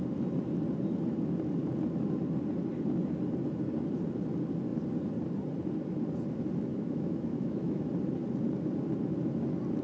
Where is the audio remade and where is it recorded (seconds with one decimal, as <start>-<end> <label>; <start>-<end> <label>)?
0.0-6.7 recorded; 6.7-7.9 remade; 7.9-9.8 recorded